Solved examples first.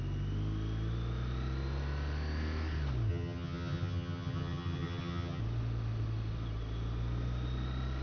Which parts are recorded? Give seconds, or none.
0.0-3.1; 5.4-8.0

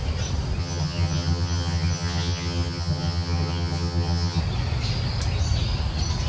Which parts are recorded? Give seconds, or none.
0.0-0.6; 4.4-6.3

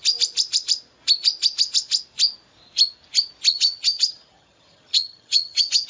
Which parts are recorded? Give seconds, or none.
0.0-3.5